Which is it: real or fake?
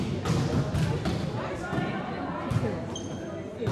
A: real